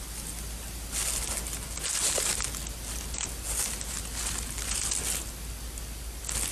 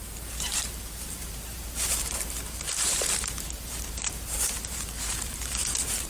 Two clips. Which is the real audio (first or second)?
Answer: first